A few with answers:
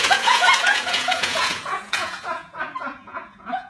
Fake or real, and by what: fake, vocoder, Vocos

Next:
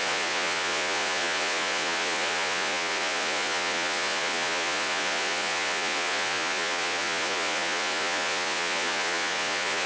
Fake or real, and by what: fake, vocoder, Vocos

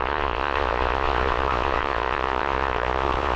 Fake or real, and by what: fake, vocoder, Vocos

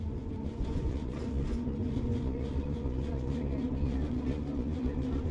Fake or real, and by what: fake, vocoder, Vocos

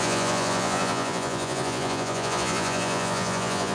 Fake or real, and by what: fake, vocoder, Vocos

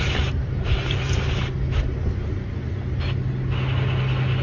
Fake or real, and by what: real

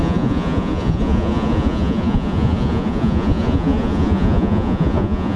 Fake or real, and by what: fake, vocoder, Vocos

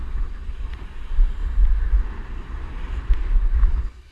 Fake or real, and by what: real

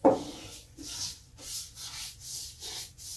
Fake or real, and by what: fake, vocoder, Vocos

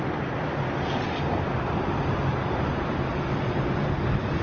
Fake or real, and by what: real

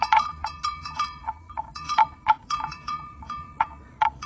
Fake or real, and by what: fake, vocoder, Vocos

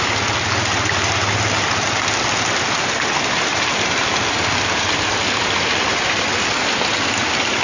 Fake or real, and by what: real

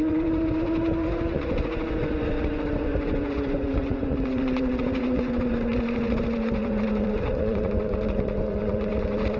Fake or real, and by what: fake, vocoder, Vocos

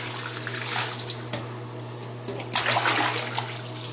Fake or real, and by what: real